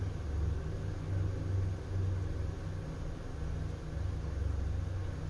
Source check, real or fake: real